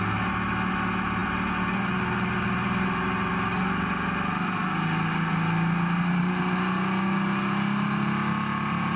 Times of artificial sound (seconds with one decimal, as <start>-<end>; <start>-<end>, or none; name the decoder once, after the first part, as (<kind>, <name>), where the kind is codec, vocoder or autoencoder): none